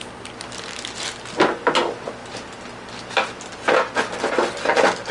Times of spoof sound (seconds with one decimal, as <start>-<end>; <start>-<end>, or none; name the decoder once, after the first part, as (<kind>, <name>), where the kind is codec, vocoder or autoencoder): none